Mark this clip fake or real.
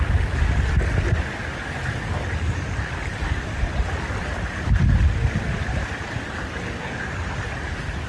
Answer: real